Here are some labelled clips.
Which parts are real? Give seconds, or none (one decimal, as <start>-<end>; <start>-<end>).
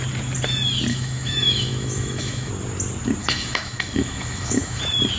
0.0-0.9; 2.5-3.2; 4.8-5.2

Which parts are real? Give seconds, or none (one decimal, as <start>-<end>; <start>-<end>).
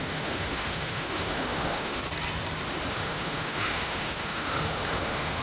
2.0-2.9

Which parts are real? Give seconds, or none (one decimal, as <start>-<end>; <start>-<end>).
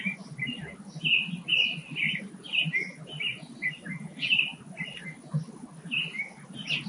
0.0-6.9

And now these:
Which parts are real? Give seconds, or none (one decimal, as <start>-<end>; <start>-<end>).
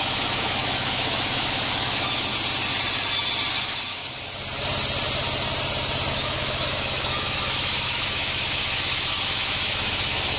2.3-3.6; 4.0-6.1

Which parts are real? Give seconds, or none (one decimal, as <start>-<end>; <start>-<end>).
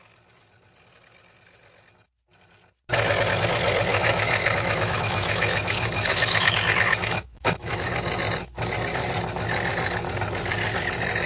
0.0-3.9; 7.9-11.3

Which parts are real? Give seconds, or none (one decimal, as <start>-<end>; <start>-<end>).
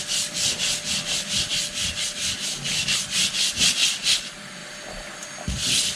0.0-6.0